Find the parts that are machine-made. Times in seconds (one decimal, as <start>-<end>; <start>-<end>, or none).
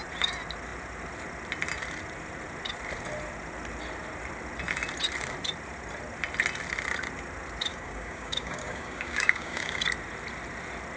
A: 7.7-9.8